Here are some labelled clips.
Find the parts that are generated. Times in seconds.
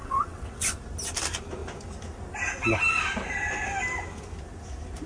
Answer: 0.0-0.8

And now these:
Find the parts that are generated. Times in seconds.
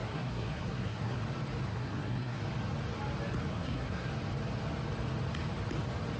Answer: 0.0-1.2; 1.7-2.4; 3.5-4.1